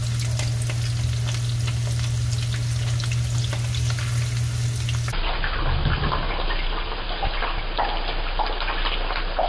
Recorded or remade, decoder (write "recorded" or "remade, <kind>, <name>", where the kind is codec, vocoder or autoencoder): recorded